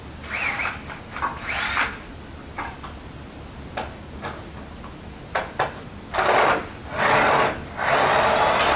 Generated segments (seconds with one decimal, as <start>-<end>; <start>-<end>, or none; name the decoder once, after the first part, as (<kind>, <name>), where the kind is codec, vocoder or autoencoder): none